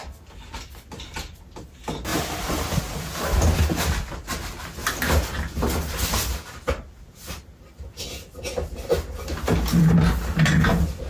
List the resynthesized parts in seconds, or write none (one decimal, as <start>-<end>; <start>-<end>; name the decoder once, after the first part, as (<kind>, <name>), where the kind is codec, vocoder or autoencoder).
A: 2.1-2.8 (vocoder, BigVGAN v2)